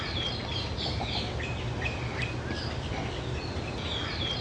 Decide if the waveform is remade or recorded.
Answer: recorded